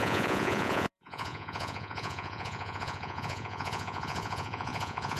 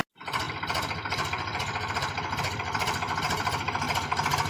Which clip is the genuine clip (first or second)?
second